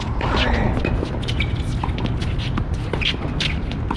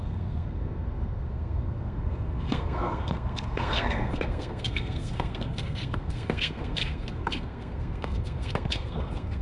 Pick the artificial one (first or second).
second